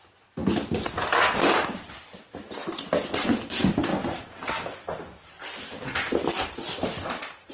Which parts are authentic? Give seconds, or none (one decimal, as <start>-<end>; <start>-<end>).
3.9-7.5